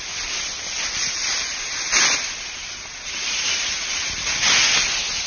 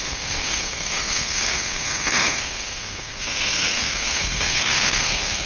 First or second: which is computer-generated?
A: second